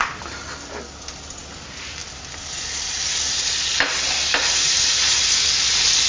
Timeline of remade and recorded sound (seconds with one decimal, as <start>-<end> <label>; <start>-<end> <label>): 0.0-6.1 recorded